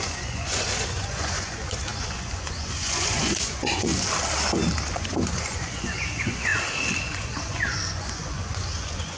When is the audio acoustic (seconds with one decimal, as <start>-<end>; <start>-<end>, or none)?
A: 3.9-4.9; 6.5-7.0